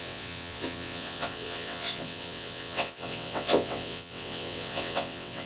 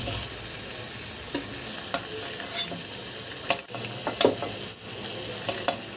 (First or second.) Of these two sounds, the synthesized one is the first